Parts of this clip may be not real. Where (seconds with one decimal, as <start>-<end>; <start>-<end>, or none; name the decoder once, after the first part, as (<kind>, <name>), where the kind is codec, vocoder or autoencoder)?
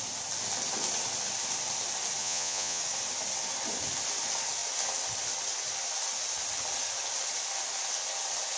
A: 2.2-2.8 (vocoder, Vocos)